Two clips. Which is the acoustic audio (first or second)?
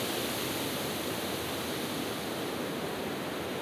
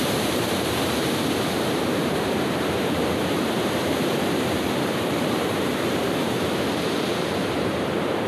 first